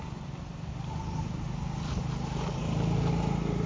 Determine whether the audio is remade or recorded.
recorded